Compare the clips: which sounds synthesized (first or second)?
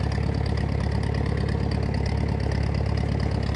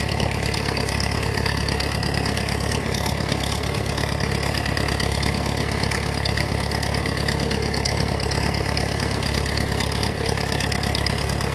second